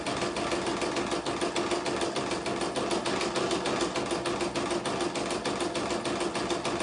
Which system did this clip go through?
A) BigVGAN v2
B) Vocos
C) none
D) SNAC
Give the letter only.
C